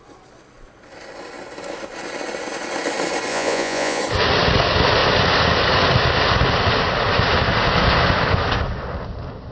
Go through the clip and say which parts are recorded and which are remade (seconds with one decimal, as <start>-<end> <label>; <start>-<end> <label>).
0.0-3.3 recorded; 3.3-4.0 remade; 4.0-9.5 recorded